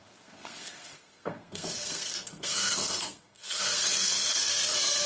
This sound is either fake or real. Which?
fake